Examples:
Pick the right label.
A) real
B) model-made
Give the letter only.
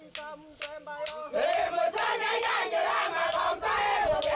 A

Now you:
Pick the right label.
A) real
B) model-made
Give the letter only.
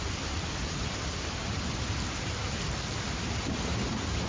A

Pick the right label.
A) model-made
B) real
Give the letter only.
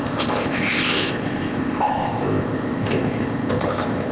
A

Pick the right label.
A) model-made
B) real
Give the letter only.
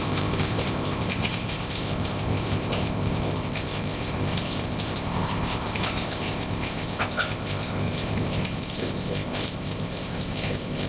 A